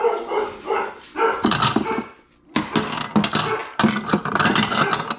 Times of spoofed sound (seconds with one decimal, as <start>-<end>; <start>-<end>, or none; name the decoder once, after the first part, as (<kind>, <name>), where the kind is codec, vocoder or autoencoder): none